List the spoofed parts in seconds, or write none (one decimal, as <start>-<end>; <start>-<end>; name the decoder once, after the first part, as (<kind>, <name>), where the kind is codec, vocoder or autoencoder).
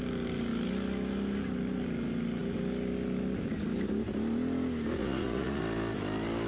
5.0-5.6 (vocoder, Vocos)